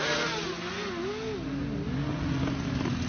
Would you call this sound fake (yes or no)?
no